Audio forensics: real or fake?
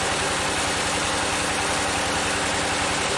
real